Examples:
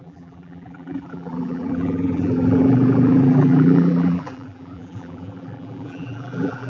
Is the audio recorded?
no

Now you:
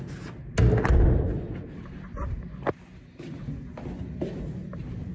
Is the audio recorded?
yes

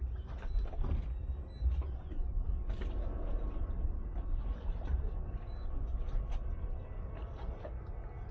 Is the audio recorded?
yes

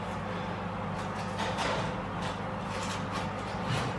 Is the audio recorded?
yes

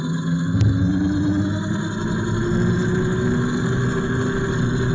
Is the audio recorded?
yes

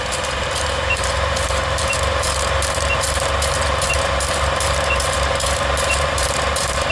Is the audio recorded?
no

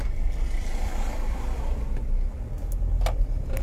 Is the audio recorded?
yes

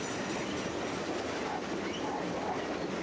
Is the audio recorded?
yes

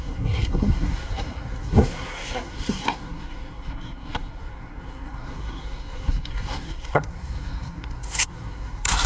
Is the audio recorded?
no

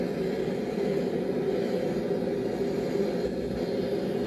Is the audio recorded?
yes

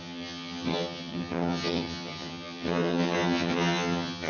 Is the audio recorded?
no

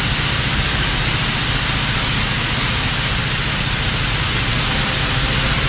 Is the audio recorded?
yes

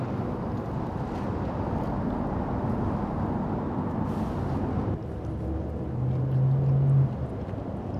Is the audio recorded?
yes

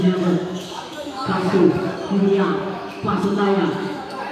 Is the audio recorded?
no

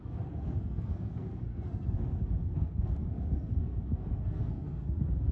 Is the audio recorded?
no